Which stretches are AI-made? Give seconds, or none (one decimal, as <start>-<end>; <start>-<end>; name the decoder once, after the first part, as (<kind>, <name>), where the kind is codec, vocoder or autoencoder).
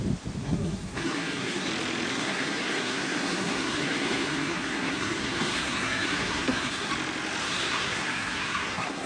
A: 0.4-1.7 (codec, SNAC); 2.1-6.9; 7.4-9.1